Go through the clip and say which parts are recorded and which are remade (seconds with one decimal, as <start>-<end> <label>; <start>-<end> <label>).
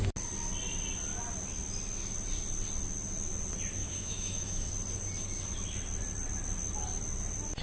0.0-3.8 recorded; 3.8-4.7 remade; 4.7-7.6 recorded